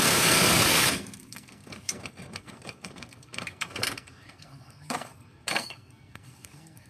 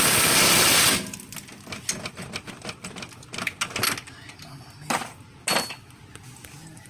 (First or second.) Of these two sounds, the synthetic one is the first